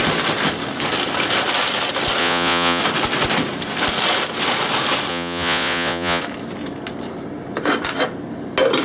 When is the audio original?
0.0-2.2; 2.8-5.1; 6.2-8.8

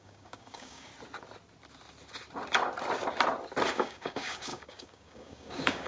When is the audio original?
0.9-3.7

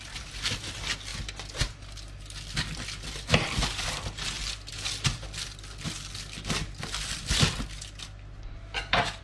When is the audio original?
0.0-9.2